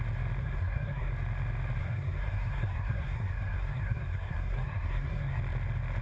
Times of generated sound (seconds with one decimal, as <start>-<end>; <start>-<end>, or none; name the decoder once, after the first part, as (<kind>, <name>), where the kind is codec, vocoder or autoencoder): 0.4-1.1 (codec, SNAC); 1.8-5.4